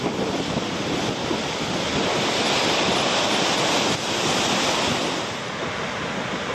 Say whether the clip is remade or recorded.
recorded